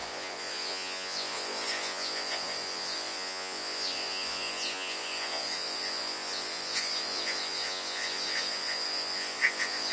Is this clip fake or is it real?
fake